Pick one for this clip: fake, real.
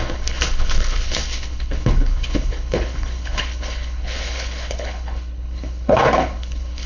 fake